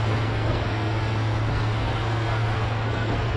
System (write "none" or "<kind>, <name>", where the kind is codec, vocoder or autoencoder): codec, SNAC